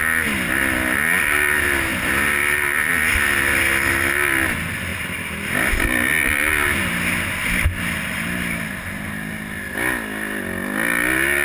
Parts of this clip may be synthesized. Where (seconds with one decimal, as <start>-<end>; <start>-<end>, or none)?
1.9-2.9